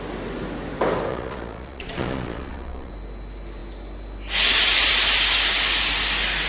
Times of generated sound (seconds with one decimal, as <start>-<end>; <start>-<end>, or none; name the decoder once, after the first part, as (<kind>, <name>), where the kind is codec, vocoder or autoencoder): 1.1-2.9 (vocoder, Vocos)